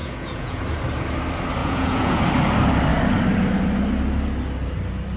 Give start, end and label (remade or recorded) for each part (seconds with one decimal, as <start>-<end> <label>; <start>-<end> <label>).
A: 0.0-0.6 remade; 0.6-1.6 recorded; 1.6-2.2 remade; 2.2-5.2 recorded